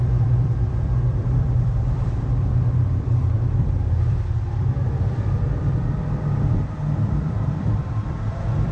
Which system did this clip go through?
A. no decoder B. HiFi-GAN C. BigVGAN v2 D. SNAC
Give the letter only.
C